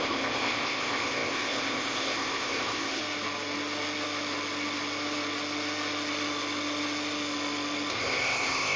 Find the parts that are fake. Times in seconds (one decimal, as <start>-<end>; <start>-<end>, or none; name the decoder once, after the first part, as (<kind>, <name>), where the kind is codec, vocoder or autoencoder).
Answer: 0.0-3.0 (codec, ZipCodec); 7.9-8.8